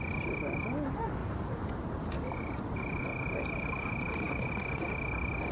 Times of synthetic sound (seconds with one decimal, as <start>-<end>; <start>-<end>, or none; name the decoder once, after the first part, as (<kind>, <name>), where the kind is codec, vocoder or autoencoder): 1.2-4.5 (vocoder, BigVGAN v2)